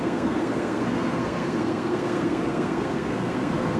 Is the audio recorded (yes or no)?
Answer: no